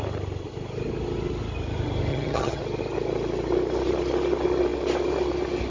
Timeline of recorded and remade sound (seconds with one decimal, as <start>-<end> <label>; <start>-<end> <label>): 0.0-2.1 recorded; 2.1-2.6 remade; 2.6-5.7 recorded